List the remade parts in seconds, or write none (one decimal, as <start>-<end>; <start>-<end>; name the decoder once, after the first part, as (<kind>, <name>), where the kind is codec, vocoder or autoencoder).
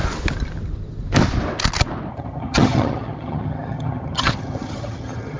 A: 2.1-5.4 (vocoder, HiFi-GAN)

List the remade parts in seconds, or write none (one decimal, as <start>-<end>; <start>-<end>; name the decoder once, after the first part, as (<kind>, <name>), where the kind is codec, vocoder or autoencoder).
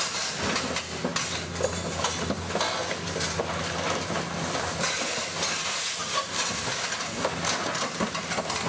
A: none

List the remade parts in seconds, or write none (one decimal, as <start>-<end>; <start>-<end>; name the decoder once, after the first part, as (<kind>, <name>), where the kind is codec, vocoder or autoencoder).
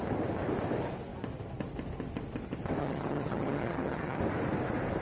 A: 2.8-4.2 (vocoder, HiFi-GAN)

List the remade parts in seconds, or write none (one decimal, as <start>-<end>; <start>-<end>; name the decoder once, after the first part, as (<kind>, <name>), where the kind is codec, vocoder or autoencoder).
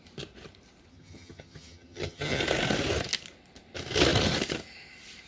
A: 0.9-2.4 (vocoder, HiFi-GAN)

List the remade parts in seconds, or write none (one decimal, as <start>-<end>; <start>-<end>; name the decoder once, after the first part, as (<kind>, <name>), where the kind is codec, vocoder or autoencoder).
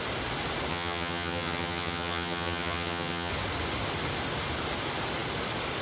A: 0.7-3.3 (vocoder, HiFi-GAN)